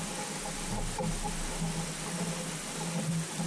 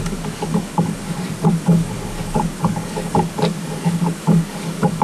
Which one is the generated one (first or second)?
second